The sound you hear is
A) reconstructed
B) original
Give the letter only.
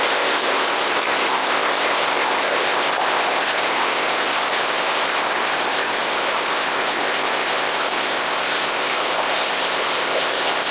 A